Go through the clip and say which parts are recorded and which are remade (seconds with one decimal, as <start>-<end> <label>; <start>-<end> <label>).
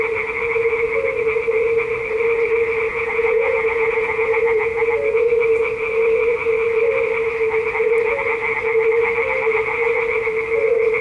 0.0-2.9 recorded; 2.9-4.9 remade; 4.9-11.0 recorded